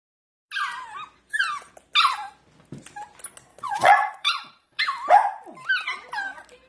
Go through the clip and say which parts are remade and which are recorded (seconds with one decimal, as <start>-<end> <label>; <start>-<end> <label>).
0.0-3.5 recorded; 3.5-4.8 remade; 4.8-6.7 recorded